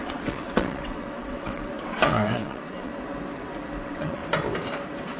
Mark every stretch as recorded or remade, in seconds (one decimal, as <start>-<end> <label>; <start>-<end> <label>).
0.0-2.9 remade; 2.9-3.8 recorded; 3.8-4.2 remade; 4.2-5.2 recorded